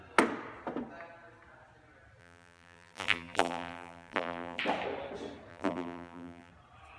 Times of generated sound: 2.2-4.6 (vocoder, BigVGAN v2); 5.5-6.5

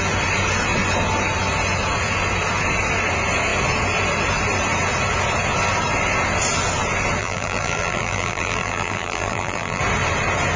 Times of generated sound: 7.2-9.8 (vocoder, BigVGAN v2)

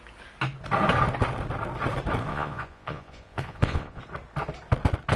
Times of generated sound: 2.3-4.0 (vocoder, Vocos)

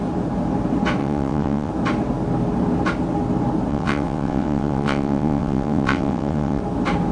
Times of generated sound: 1.0-1.7 (vocoder, WaveNeXt); 3.7-6.6

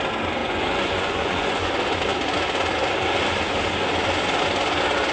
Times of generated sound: 0.4-1.7 (vocoder, Vocos)